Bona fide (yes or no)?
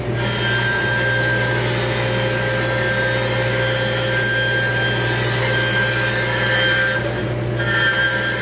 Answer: yes